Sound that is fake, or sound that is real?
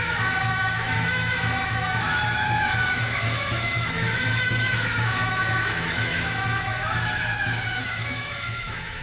fake